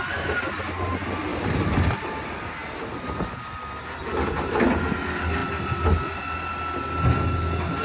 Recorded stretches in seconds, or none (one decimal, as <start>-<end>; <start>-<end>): 0.0-1.3; 4.8-7.8